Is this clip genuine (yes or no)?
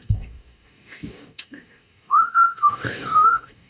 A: no